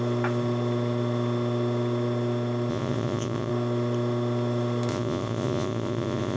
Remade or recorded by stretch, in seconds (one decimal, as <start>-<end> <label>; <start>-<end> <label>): 0.0-2.7 recorded; 2.7-3.5 remade; 3.5-4.9 recorded; 4.9-6.4 remade